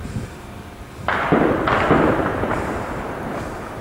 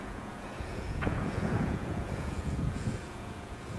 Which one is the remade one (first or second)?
second